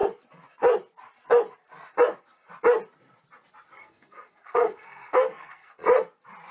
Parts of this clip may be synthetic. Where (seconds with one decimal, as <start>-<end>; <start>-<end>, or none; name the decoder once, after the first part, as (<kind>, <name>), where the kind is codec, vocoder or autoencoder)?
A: 3.8-5.7 (codec, SNAC)